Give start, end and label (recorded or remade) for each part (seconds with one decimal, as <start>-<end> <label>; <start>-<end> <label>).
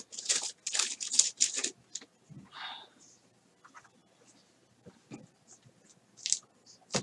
0.0-7.0 recorded